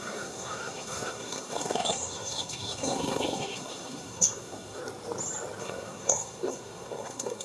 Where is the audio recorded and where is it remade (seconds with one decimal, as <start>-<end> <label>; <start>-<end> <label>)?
0.0-4.8 remade; 4.8-5.6 recorded; 5.6-7.4 remade